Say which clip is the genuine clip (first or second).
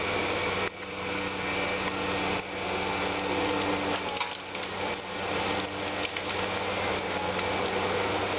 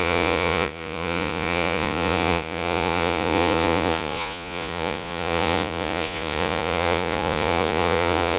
first